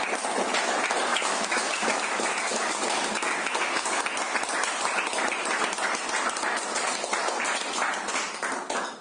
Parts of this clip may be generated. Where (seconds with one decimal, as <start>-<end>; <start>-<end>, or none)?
1.1-4.0